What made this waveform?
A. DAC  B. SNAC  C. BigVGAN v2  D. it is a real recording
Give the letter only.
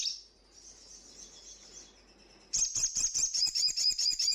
D